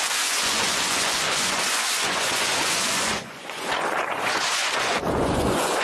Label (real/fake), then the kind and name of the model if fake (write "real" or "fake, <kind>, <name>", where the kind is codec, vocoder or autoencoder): fake, vocoder, Vocos